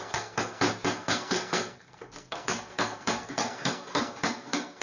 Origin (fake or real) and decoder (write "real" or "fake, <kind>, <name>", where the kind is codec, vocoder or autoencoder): fake, codec, SNAC